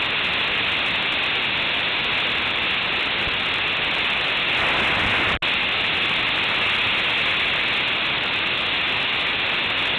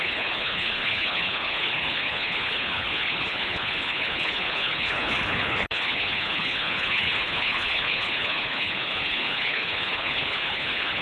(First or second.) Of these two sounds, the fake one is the second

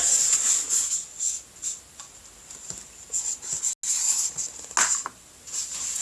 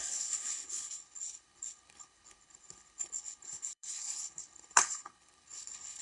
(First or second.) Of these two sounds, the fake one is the second